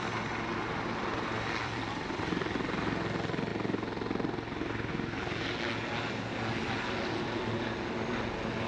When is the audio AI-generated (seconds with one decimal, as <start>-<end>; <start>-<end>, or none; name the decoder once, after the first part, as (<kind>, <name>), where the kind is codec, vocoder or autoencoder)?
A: 1.1-2.2 (vocoder, BigVGAN v2)